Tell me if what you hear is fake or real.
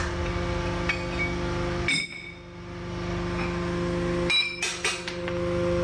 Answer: real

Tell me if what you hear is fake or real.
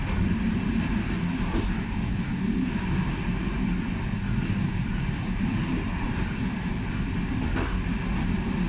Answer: real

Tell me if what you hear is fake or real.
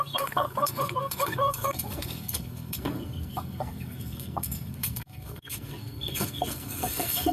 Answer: fake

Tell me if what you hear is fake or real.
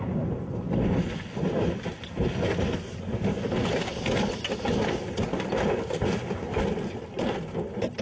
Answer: real